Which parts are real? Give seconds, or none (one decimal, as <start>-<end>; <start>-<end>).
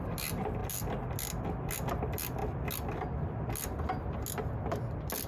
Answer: 0.0-5.3